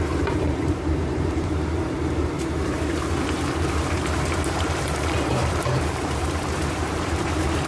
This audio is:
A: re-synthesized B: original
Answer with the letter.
A